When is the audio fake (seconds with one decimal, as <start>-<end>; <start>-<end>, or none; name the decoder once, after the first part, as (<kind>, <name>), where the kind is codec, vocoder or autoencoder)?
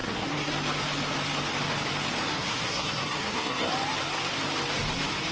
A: 0.0-0.5 (codec, SNAC); 2.3-3.7